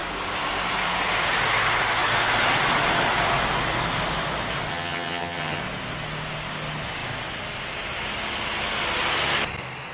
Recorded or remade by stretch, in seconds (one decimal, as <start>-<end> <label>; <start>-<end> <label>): 0.0-4.7 recorded; 4.7-5.6 remade; 5.6-9.9 recorded